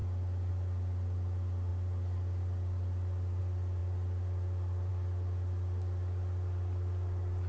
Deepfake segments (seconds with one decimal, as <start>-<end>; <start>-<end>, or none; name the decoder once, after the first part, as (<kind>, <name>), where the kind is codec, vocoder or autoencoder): none

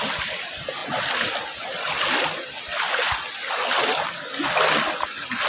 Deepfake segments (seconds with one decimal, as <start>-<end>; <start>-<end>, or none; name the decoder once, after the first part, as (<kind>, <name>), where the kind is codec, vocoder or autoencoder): none

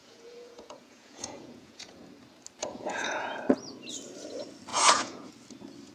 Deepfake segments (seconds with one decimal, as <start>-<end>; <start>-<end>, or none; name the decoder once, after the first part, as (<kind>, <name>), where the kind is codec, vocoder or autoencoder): 0.0-2.0 (vocoder, Vocos); 2.6-3.4; 4.7-5.3

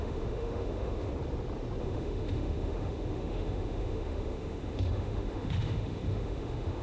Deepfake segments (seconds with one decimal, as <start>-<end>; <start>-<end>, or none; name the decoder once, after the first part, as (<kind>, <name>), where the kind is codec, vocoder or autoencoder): 0.0-1.1 (autoencoder, DAC-VAE); 1.8-6.8

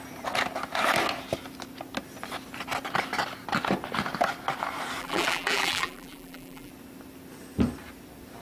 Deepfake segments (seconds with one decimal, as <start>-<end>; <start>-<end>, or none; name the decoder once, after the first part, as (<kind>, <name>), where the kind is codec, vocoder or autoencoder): 5.0-6.7 (vocoder, BigVGAN v2)

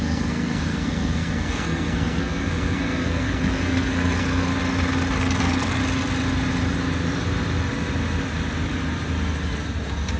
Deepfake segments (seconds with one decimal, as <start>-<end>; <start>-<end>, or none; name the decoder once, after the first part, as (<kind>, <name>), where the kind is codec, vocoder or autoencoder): 0.0-4.5 (codec, SNAC); 5.2-5.8

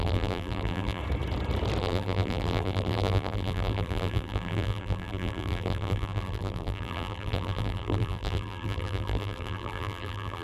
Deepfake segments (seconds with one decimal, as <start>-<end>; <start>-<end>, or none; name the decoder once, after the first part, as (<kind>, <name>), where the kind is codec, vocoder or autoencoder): 0.0-1.0 (vocoder, BigVGAN v2); 1.8-10.4

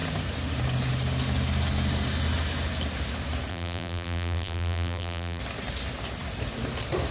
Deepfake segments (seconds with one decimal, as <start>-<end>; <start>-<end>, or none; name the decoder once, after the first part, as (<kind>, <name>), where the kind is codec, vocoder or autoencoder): 3.5-5.4 (vocoder, BigVGAN v2)